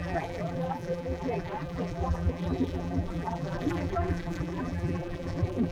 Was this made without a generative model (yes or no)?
no